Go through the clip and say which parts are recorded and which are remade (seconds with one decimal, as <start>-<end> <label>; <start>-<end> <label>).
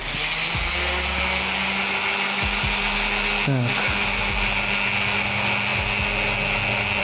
0.0-7.0 recorded